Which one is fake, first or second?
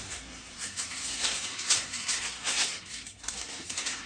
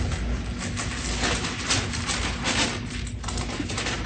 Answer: first